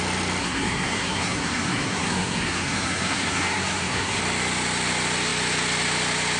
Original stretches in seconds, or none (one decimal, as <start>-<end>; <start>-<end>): 0.0-0.4; 4.2-6.4